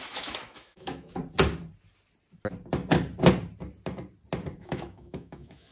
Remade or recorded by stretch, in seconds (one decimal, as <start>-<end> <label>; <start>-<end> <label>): 0.0-1.2 remade; 1.2-4.6 recorded; 4.6-5.7 remade